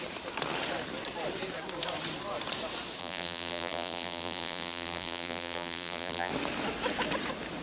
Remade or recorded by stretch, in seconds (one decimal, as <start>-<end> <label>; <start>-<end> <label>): 0.0-3.0 recorded; 3.0-6.3 remade; 6.3-7.6 recorded